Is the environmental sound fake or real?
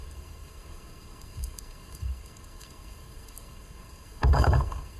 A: fake